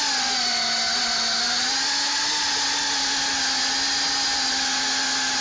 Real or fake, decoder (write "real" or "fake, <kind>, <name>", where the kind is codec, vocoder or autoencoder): real